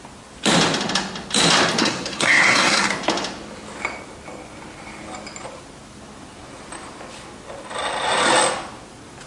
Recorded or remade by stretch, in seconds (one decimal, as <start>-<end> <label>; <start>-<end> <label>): 0.0-1.8 recorded; 1.8-2.9 remade; 2.9-9.3 recorded